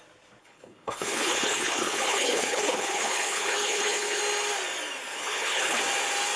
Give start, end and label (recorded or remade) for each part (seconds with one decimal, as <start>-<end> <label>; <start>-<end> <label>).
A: 0.0-0.4 recorded; 0.4-4.2 remade; 4.2-5.1 recorded; 5.1-5.8 remade; 5.8-6.4 recorded